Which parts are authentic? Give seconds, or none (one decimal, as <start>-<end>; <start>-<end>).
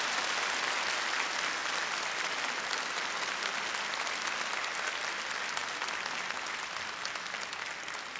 0.0-8.2